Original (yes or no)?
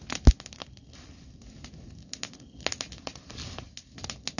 yes